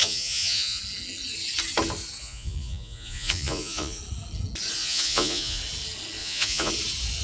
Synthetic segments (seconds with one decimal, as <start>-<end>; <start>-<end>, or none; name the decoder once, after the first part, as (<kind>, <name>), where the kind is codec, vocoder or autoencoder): 0.0-0.8 (vocoder, Vocos); 2.2-4.0; 4.8-5.6; 6.2-6.7